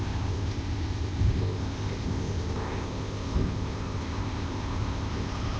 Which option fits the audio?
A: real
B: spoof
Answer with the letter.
B